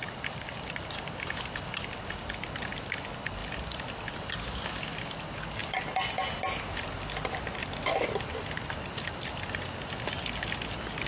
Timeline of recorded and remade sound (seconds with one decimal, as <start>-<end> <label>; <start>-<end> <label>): 0.0-3.4 recorded; 3.4-4.1 remade; 4.1-7.6 recorded; 7.6-9.6 remade; 9.6-11.1 recorded